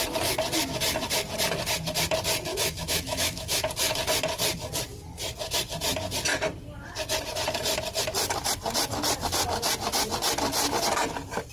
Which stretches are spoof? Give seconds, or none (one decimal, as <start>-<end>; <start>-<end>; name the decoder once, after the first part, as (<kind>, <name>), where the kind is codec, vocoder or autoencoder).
2.5-3.7 (autoencoder, DAC-VAE)

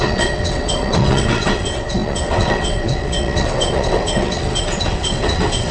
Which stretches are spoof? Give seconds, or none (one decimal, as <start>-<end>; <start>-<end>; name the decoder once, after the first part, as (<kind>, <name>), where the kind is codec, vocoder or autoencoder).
0.0-5.7 (vocoder, WaveNeXt)

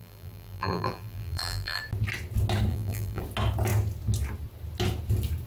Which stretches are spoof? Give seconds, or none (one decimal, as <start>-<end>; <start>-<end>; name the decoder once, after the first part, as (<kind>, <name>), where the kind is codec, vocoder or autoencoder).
0.0-1.8 (vocoder, BigVGAN v2); 2.7-3.2

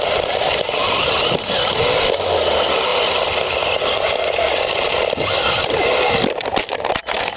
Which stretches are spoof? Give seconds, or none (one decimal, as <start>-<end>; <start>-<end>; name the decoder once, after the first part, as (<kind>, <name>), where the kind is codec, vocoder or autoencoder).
none